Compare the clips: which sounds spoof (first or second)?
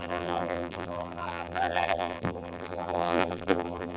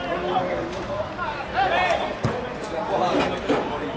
first